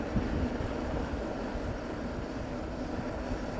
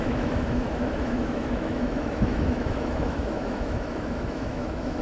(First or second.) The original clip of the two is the first